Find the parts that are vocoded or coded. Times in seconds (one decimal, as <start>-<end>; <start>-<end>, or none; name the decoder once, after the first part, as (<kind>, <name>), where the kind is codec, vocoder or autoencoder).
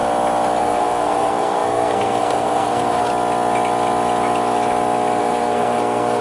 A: 0.6-3.1 (codec, SNAC); 5.2-6.2